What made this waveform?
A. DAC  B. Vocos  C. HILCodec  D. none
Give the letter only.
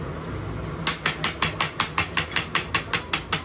D